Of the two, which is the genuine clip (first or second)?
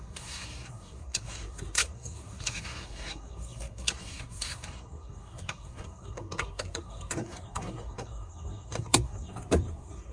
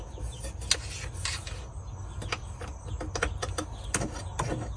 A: second